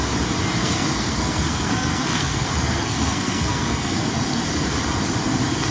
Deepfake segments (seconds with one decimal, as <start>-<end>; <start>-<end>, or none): 0.6-4.0